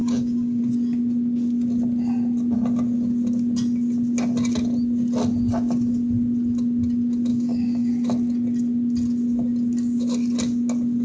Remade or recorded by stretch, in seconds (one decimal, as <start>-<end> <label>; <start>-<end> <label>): 0.0-0.6 remade; 0.6-7.3 recorded; 7.3-7.9 remade; 7.9-11.0 recorded